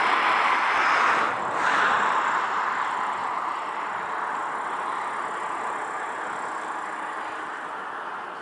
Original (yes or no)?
yes